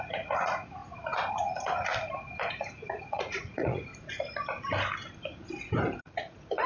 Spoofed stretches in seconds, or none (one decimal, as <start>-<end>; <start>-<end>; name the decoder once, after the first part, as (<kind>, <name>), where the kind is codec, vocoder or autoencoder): 0.0-0.8 (vocoder, Vocos); 1.3-1.9; 2.5-3.9; 6.0-6.7